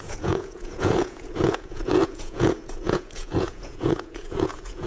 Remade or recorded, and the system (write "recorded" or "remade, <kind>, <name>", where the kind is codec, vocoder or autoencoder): remade, vocoder, Vocos